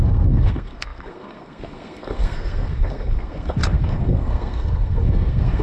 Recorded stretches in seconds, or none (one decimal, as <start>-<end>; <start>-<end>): none